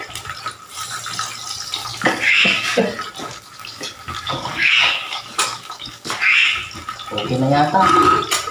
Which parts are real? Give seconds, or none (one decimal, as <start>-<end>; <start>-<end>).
0.0-1.8; 2.8-3.2; 6.6-8.5